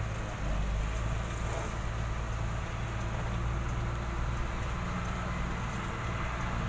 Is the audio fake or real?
real